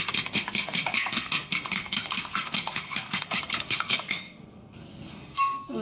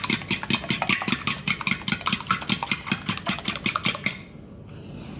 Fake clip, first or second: first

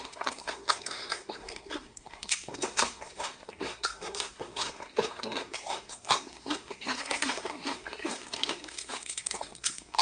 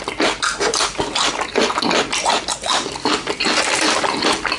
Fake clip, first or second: first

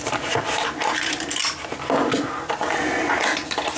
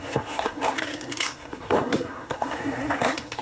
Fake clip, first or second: second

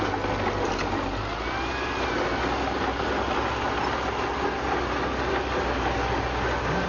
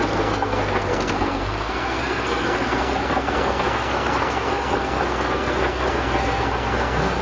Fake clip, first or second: second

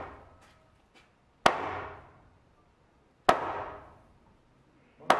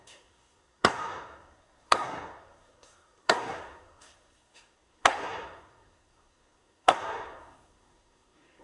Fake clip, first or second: second